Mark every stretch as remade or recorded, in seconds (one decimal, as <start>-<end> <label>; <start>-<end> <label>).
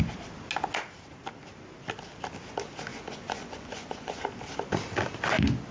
0.0-2.9 recorded; 2.9-4.2 remade; 4.2-5.7 recorded